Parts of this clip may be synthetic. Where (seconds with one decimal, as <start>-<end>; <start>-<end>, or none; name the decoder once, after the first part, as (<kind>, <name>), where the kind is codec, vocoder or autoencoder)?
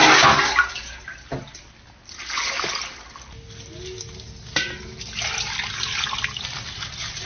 none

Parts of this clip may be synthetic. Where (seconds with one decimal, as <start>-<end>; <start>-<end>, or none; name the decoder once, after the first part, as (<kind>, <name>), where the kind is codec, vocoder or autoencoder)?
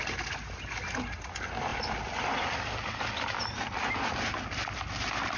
none